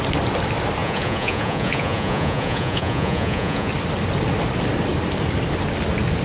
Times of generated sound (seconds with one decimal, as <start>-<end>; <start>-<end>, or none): 0.8-3.7